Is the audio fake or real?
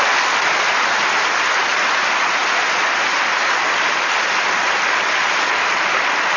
real